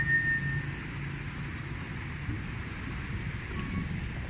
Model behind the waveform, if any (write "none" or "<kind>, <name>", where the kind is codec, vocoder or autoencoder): none